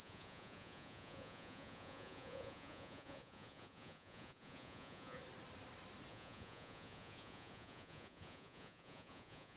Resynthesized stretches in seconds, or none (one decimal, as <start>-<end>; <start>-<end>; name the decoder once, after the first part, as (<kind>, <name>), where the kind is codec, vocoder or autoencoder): 0.0-5.2 (vocoder, Vocos); 6.1-9.6